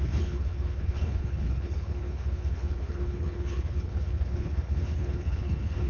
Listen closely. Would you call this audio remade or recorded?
remade